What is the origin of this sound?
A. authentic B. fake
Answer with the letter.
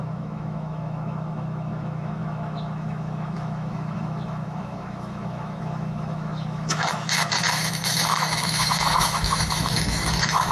B